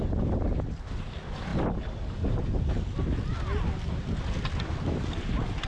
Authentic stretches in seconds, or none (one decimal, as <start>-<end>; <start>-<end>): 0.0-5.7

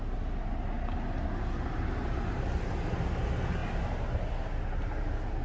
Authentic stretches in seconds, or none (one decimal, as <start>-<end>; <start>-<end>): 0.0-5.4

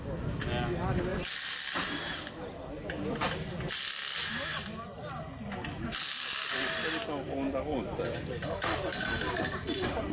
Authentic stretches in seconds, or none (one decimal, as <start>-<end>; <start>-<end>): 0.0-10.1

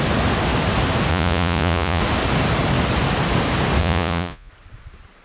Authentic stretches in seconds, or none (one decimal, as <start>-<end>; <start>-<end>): 0.0-1.1; 2.0-3.8; 4.5-5.2

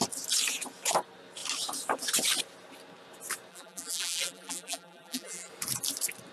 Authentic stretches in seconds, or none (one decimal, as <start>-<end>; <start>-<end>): 0.0-3.5; 5.5-6.3